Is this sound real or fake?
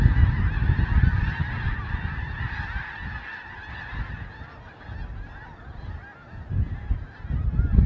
real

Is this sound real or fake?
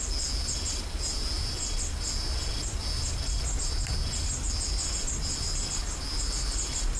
real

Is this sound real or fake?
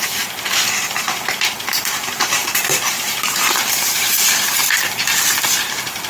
fake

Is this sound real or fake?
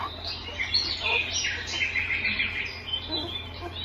real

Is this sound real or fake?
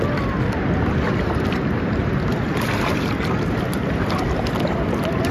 real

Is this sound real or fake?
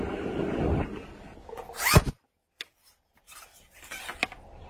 real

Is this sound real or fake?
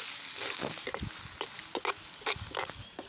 real